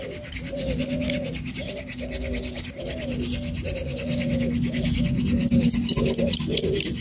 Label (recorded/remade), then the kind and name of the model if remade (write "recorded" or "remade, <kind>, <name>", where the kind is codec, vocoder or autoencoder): recorded